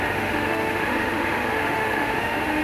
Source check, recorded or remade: remade